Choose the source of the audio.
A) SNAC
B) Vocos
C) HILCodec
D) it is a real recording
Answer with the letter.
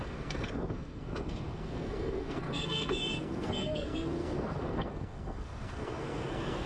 A